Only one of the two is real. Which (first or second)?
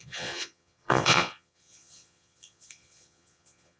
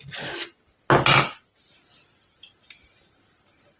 second